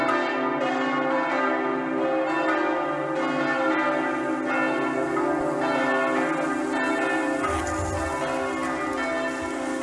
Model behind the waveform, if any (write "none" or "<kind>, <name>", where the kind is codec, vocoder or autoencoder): none